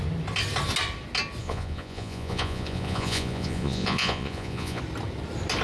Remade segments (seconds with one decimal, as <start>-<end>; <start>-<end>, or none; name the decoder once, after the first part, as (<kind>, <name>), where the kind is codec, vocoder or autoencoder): 1.4-4.8 (vocoder, Vocos)